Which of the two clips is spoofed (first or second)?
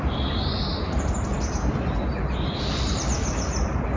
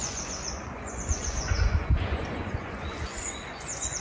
second